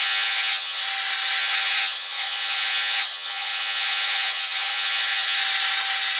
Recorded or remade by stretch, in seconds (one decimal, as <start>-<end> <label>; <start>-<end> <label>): 0.0-0.8 remade; 0.8-1.4 recorded; 1.4-5.4 remade; 5.4-6.2 recorded